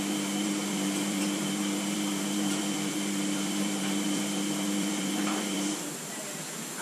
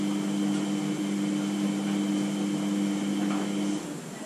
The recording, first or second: second